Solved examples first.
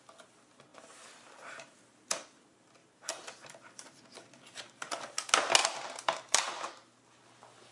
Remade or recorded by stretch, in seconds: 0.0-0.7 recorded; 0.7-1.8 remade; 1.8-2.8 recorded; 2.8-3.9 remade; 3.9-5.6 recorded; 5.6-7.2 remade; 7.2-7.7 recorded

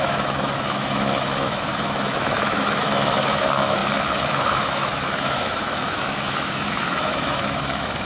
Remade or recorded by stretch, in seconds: 0.0-8.1 remade

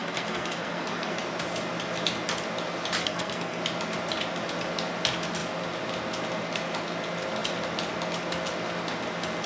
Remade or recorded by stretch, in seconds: 0.0-1.2 remade; 1.2-3.0 recorded; 3.0-3.6 remade; 3.6-9.5 recorded

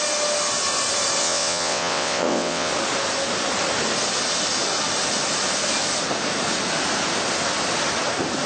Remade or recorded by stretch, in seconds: 0.0-1.2 recorded; 1.2-2.7 remade; 2.7-8.5 recorded

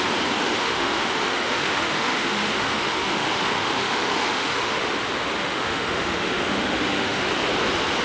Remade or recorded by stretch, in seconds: 0.0-0.4 recorded; 0.4-4.8 remade; 4.8-5.4 recorded; 5.4-7.3 remade; 7.3-8.0 recorded

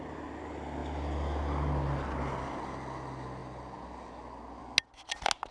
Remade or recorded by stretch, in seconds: 0.0-5.5 recorded

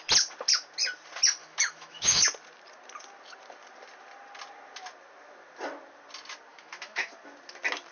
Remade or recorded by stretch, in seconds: 0.0-1.4 recorded; 1.4-2.2 remade; 2.2-6.5 recorded; 6.5-7.1 remade; 7.1-7.9 recorded

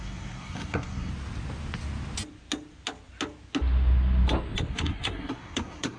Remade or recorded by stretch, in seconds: 0.0-1.1 remade; 1.1-4.7 recorded; 4.7-6.0 remade